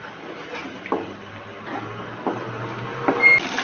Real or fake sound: real